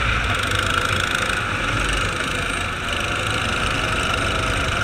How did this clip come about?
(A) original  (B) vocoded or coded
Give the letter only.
A